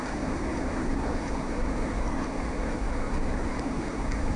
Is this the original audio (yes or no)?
no